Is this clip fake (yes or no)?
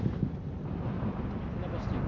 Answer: no